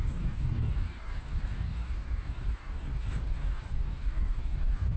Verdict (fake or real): fake